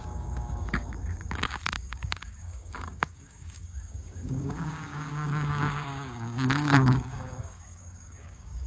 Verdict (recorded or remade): remade